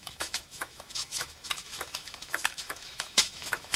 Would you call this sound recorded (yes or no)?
no